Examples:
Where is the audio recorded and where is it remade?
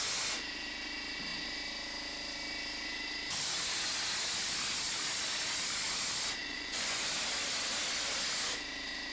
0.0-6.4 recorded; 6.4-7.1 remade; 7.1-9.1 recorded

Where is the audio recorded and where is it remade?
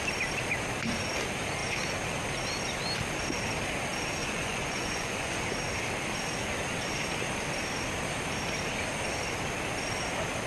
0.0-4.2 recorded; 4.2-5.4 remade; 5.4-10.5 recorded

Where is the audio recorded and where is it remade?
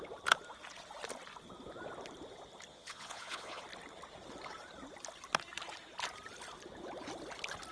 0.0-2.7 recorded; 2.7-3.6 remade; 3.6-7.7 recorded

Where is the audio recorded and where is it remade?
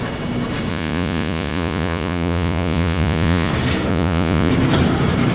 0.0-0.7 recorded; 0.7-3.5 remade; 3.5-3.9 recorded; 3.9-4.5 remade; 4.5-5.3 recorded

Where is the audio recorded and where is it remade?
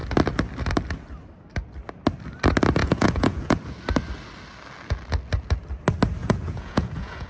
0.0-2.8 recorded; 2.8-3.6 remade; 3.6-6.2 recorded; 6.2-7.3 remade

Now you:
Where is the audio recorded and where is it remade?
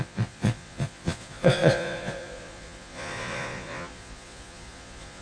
0.0-5.2 remade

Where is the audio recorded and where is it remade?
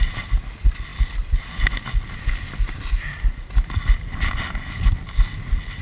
0.0-5.8 recorded